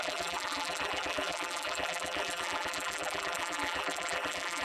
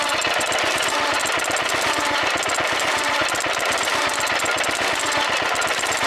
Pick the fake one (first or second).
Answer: first